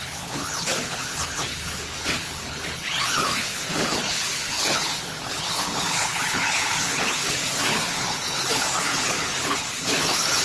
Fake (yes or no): yes